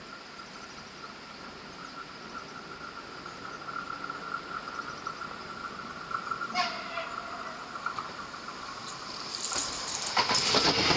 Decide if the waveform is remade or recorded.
recorded